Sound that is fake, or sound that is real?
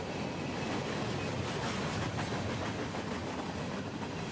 real